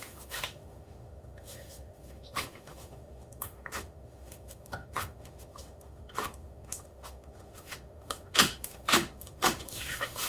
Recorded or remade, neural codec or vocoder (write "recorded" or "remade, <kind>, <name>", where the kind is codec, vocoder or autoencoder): remade, autoencoder, DAC-VAE